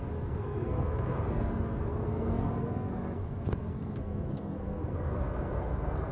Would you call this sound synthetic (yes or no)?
yes